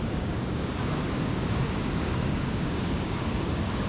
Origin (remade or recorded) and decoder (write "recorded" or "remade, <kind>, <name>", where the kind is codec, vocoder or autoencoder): remade, codec, DAC